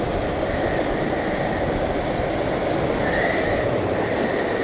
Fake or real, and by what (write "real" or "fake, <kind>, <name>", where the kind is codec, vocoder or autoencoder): real